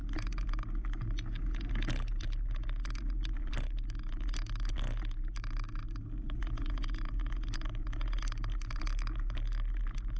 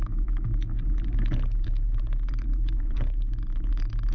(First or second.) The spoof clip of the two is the second